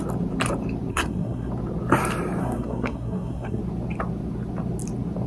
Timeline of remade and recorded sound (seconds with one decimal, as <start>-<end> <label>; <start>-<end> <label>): 0.0-0.9 recorded; 0.9-1.5 remade; 1.5-2.4 recorded; 2.4-3.6 remade; 3.6-5.3 recorded